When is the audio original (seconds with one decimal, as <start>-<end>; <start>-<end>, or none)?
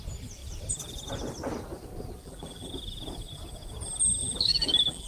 0.0-2.2; 2.7-4.2